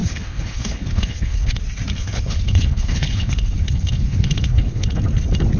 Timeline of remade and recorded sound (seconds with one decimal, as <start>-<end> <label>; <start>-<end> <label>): 0.0-1.6 remade; 1.6-2.0 recorded; 2.0-5.0 remade; 5.0-5.6 recorded